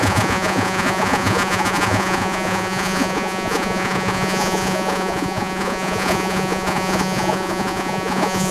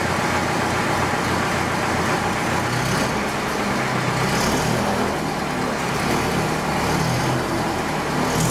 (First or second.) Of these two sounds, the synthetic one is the first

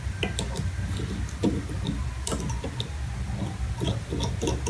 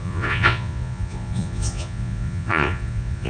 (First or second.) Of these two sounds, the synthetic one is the second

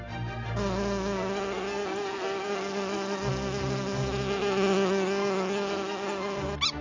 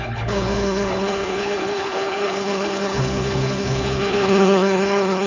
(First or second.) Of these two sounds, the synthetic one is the second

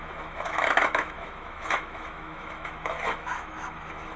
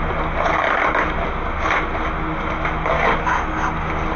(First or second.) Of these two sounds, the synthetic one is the first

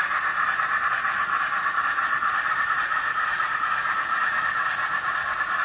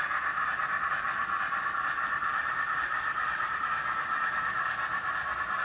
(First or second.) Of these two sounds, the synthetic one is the first